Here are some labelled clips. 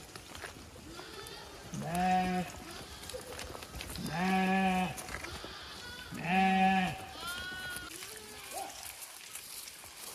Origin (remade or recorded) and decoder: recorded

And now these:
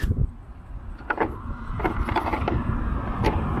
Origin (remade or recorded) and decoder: recorded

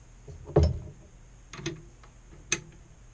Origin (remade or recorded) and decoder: recorded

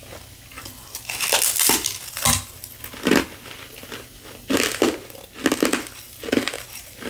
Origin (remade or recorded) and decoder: recorded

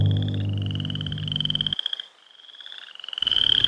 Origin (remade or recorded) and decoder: recorded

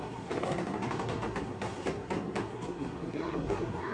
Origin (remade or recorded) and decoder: remade, codec, SNAC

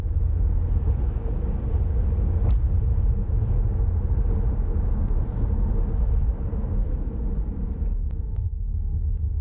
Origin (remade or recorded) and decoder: recorded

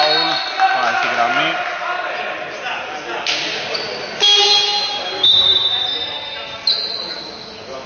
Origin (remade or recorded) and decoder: recorded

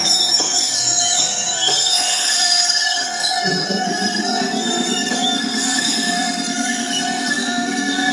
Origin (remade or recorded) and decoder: remade, codec, SNAC